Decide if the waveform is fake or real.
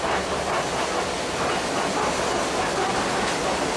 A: real